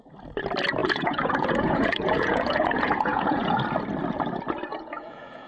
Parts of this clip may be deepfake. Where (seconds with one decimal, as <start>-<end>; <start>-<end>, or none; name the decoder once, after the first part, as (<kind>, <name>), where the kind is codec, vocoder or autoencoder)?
0.8-3.6 (vocoder, Vocos); 4.7-5.5